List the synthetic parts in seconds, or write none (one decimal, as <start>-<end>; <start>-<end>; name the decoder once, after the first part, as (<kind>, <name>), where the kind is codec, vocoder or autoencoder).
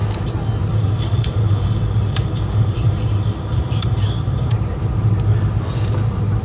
0.7-4.5 (vocoder, BigVGAN v2)